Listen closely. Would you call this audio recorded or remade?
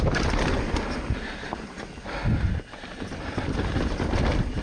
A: recorded